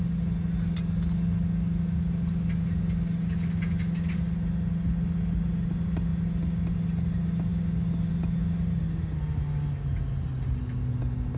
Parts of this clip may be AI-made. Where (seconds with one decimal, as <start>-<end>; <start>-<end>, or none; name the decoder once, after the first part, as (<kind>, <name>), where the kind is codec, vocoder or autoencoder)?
none